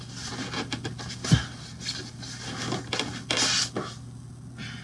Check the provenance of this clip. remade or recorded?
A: recorded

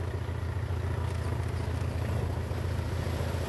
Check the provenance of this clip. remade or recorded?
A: recorded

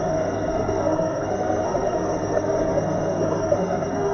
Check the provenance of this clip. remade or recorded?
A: remade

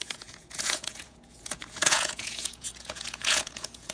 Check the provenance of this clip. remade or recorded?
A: remade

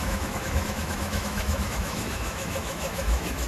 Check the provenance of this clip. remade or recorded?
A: remade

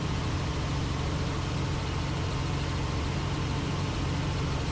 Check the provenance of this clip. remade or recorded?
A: recorded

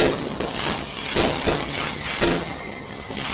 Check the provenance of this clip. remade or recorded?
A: remade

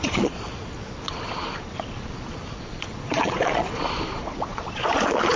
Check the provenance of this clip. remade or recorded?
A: remade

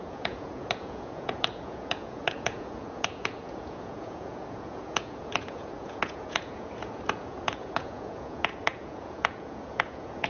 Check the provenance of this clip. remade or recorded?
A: remade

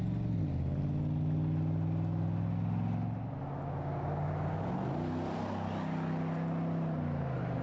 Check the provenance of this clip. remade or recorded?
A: recorded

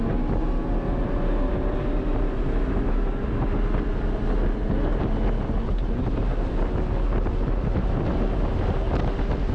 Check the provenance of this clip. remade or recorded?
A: recorded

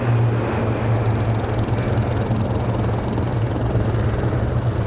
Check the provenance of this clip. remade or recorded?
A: recorded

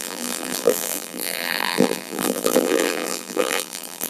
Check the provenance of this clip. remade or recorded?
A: remade